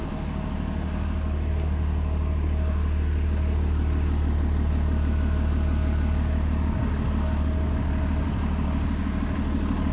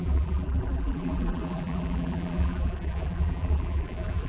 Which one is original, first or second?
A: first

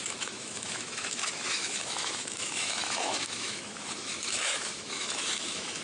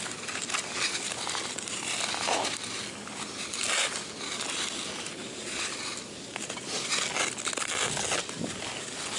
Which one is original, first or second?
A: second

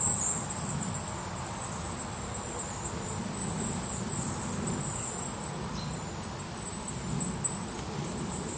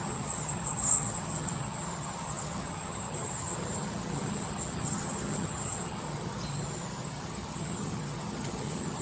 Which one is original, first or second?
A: first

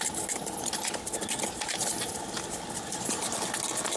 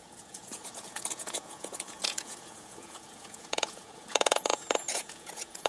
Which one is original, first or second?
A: first